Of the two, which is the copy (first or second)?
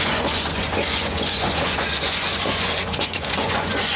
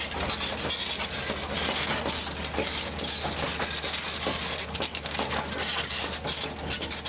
first